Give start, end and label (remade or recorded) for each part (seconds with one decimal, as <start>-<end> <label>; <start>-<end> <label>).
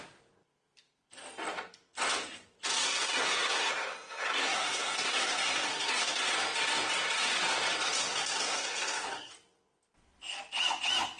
0.0-2.8 recorded; 2.8-3.7 remade; 3.7-4.3 recorded; 4.3-6.1 remade; 6.1-8.0 recorded; 8.0-9.3 remade; 9.3-11.2 recorded